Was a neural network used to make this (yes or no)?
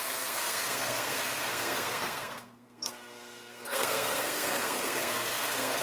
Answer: yes